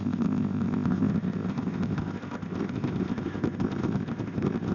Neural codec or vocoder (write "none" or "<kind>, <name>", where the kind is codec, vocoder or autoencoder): codec, ZipCodec